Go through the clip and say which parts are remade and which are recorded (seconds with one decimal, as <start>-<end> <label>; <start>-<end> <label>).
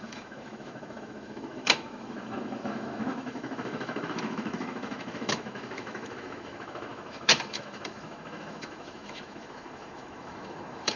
0.0-11.0 remade